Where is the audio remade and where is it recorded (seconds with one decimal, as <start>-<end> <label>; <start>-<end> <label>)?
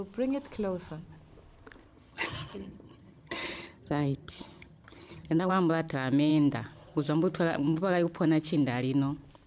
0.0-1.9 recorded; 1.9-5.5 remade; 5.5-9.5 recorded